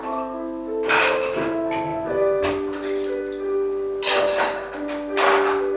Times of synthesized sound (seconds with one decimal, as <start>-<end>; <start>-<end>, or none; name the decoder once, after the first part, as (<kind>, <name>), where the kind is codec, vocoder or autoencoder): none